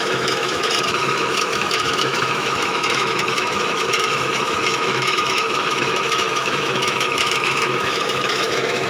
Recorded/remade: remade